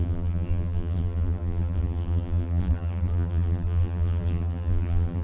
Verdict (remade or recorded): remade